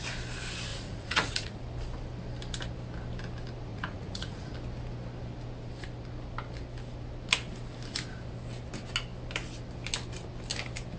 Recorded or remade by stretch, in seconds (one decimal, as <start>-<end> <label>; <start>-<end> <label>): 0.0-0.7 recorded; 0.7-1.6 remade; 1.6-3.7 recorded; 3.7-4.5 remade; 4.5-11.0 recorded